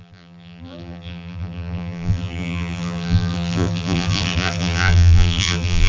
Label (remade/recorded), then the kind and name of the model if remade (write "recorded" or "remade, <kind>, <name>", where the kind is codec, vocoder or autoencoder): remade, vocoder, BigVGAN v2